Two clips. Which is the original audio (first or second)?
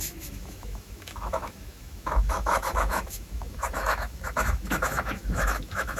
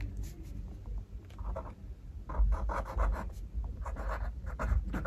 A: second